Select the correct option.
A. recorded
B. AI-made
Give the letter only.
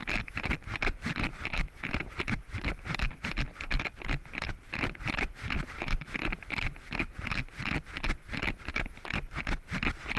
B